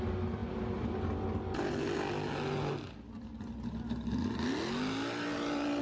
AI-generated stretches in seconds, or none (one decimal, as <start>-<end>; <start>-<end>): 5.3-5.8